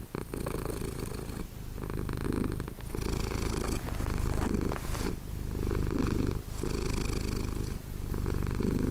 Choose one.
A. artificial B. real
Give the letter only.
B